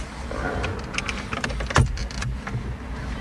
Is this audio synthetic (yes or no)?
no